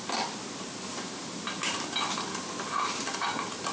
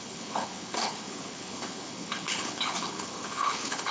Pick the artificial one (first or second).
second